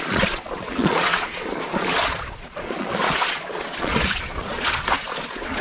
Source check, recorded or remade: remade